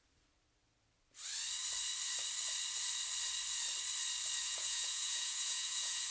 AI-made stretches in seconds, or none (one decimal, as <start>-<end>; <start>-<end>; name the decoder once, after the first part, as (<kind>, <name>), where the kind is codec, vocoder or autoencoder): 4.4-6.1 (vocoder, Vocos)